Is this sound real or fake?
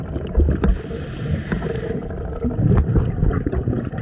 real